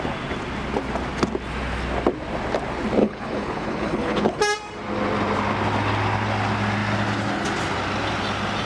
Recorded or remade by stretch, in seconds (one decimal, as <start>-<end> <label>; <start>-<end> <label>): 0.0-3.0 recorded; 3.0-4.4 remade; 4.4-8.7 recorded

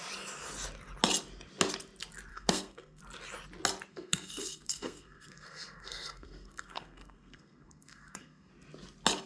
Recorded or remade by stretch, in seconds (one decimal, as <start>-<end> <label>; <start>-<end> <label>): 0.0-2.3 recorded; 2.3-3.0 remade; 3.0-3.9 recorded; 3.9-8.5 remade; 8.5-9.3 recorded

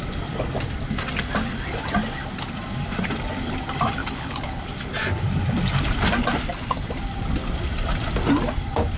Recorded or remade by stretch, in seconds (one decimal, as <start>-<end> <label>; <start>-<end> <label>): 0.0-4.0 recorded; 4.0-4.6 remade; 4.6-9.0 recorded

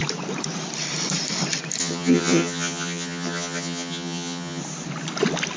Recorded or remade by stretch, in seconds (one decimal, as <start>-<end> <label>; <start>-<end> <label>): 0.0-1.8 recorded; 1.8-4.6 remade; 4.6-5.6 recorded